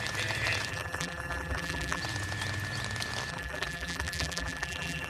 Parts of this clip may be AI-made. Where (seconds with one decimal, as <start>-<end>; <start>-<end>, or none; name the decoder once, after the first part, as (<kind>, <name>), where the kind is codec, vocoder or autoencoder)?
0.7-2.0 (vocoder, BigVGAN v2); 3.3-5.1